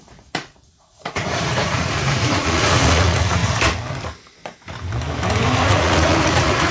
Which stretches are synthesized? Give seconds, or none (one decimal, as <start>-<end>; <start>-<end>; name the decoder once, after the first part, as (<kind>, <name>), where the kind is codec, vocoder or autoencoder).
0.0-3.4 (vocoder, Vocos); 5.7-6.7

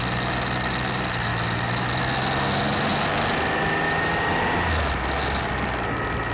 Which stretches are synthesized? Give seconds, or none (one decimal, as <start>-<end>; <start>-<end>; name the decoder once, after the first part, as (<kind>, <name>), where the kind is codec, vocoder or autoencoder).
none

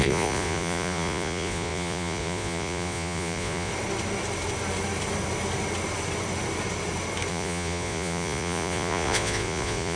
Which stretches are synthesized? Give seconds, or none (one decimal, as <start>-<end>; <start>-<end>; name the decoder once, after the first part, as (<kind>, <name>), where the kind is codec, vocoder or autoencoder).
0.0-3.7 (vocoder, Vocos); 7.3-10.0